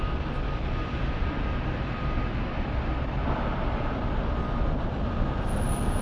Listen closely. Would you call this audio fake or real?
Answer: real